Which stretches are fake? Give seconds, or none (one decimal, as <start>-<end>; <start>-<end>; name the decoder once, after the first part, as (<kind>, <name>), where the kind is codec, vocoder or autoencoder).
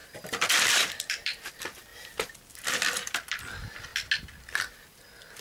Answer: 0.0-3.9 (vocoder, BigVGAN v2); 4.9-5.4